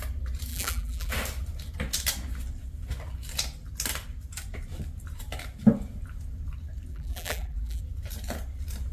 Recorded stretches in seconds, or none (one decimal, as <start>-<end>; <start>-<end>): 0.0-0.5; 1.1-6.9; 7.8-8.9